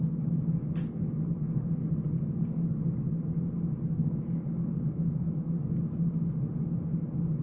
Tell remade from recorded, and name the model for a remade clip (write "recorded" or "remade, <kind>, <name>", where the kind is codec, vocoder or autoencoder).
recorded